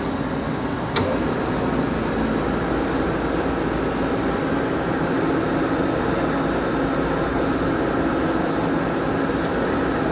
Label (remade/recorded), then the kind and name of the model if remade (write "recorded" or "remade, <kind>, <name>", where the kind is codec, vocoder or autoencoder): recorded